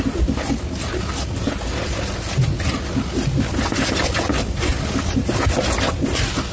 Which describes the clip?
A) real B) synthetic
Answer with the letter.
A